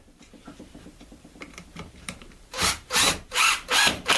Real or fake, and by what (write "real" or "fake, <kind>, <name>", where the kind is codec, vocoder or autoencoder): fake, vocoder, BigVGAN v2